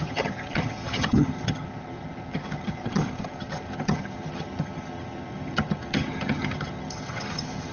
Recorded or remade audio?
remade